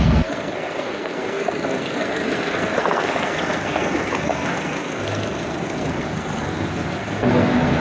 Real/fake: fake